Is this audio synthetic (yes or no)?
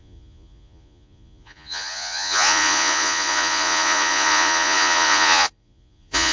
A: yes